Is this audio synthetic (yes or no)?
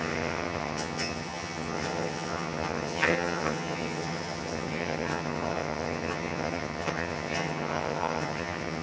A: yes